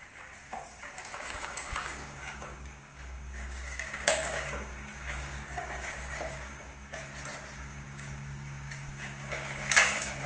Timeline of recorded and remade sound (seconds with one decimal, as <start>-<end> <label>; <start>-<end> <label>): 0.0-7.1 remade; 7.1-7.6 recorded; 7.6-10.3 remade